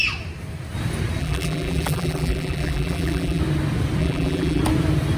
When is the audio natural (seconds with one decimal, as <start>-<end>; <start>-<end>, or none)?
0.0-1.2; 3.4-4.0; 4.6-5.2